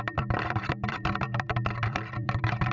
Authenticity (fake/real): fake